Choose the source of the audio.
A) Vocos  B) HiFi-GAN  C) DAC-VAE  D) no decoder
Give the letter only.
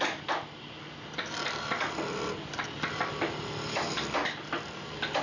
D